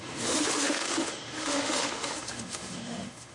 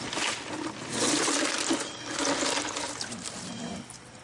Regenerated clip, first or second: first